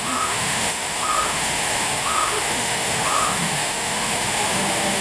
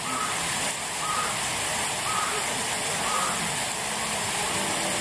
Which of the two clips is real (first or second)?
second